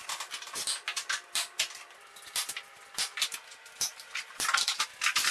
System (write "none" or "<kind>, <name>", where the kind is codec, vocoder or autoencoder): none